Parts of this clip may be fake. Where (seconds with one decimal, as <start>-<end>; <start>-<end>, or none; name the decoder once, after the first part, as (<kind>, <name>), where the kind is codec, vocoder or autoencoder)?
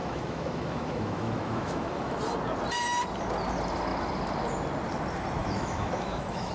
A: 0.0-2.2 (autoencoder, DAC-VAE); 5.4-6.5